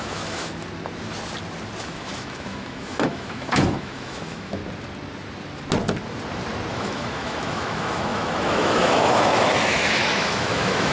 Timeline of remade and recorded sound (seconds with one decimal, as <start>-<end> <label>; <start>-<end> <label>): 0.0-0.5 remade; 0.5-1.8 recorded; 1.8-4.6 remade; 4.6-6.7 recorded; 6.7-10.9 remade